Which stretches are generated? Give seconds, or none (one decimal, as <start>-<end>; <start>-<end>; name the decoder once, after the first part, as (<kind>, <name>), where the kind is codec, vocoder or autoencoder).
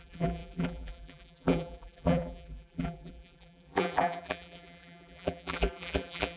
0.0-6.4 (vocoder, BigVGAN v2)